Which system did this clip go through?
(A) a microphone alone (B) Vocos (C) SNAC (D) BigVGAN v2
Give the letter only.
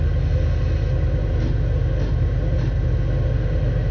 A